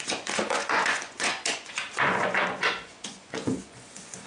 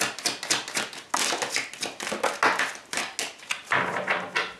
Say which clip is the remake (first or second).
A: first